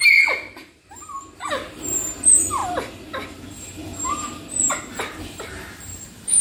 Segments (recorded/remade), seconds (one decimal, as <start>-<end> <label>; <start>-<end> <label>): 0.0-2.6 remade; 2.6-5.0 recorded; 5.0-6.4 remade